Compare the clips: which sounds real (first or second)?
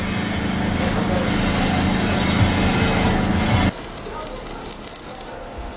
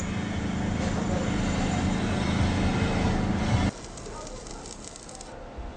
first